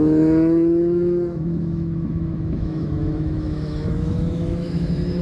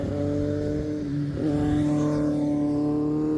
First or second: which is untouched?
second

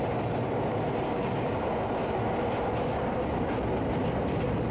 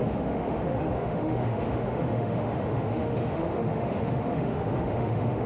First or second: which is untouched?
first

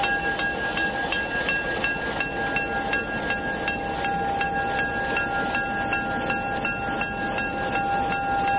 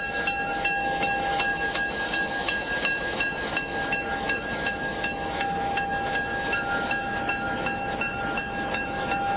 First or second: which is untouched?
first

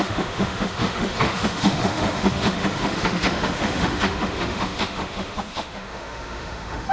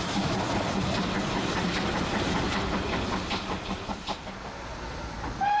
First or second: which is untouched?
second